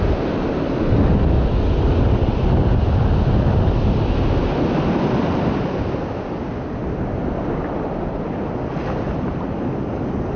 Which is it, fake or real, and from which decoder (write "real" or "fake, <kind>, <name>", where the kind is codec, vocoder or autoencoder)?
real